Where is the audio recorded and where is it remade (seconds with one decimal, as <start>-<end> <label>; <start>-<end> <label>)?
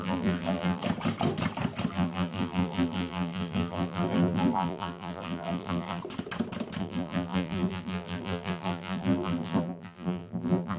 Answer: 0.0-0.8 remade; 0.8-1.9 recorded; 1.9-6.0 remade; 6.0-6.8 recorded; 6.8-10.8 remade